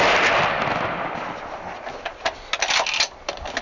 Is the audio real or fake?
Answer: real